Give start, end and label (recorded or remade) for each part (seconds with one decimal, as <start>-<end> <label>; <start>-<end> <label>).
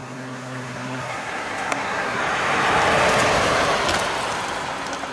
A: 0.0-2.2 remade; 2.2-5.1 recorded